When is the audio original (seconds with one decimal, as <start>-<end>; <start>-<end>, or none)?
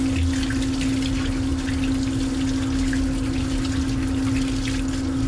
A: 0.0-5.3